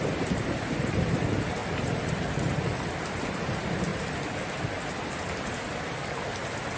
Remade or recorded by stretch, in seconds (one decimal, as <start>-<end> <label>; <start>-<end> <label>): 0.0-6.8 recorded